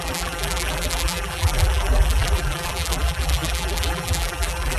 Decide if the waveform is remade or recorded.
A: remade